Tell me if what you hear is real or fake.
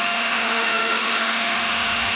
fake